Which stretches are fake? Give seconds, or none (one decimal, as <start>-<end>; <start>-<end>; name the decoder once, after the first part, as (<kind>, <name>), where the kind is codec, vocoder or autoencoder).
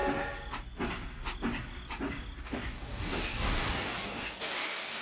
2.4-5.0 (codec, DAC)